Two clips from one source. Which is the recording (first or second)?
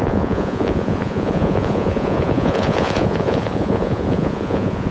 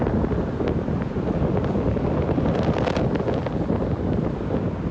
second